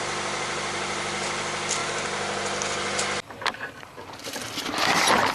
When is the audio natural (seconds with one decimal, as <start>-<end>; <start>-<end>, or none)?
0.0-5.3